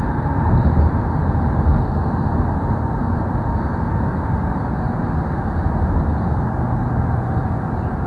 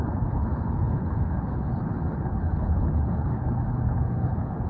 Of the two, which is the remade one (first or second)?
second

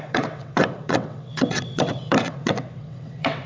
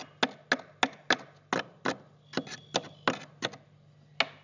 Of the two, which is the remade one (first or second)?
first